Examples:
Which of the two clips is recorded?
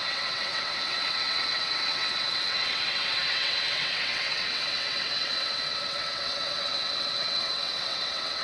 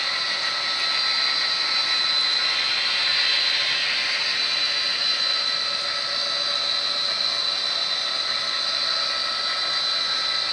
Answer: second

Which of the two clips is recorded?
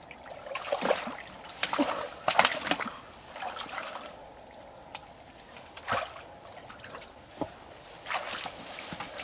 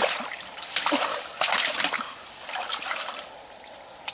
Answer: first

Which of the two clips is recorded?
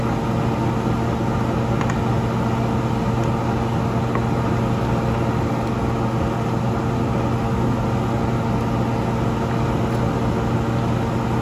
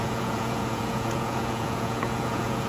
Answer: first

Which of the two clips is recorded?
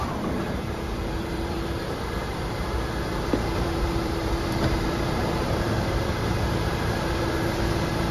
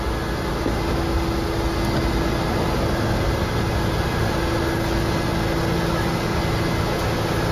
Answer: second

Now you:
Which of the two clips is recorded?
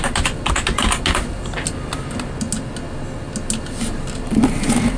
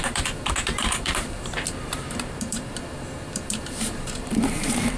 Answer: first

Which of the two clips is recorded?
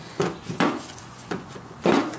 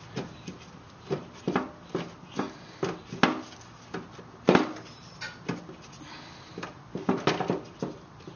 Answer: second